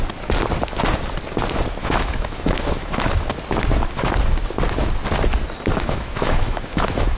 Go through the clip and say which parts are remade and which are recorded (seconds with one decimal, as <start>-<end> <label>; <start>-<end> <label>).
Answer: 0.0-1.8 recorded; 1.8-3.1 remade; 3.1-5.7 recorded; 5.7-7.2 remade